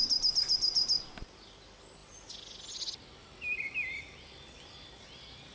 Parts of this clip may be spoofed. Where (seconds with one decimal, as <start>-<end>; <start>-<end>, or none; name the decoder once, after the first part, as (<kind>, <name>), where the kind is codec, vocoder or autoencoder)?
none

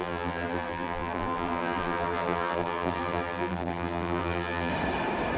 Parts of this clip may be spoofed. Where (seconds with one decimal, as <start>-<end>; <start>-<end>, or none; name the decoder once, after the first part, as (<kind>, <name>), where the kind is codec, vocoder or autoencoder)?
0.0-4.7 (vocoder, BigVGAN v2)

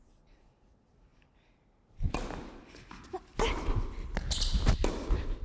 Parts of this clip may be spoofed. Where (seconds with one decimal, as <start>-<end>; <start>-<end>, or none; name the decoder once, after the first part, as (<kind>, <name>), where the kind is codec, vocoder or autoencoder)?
none

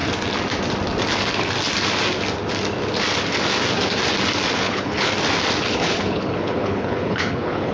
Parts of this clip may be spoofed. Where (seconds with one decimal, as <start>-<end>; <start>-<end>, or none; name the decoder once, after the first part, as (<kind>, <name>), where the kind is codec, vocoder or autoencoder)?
4.6-5.1 (codec, HILCodec); 5.7-7.7

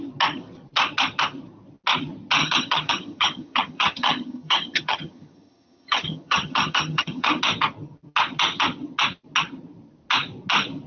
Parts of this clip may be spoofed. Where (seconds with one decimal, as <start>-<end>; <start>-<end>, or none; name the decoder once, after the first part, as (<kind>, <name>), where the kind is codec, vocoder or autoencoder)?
2.4-7.4 (vocoder, HiFi-GAN)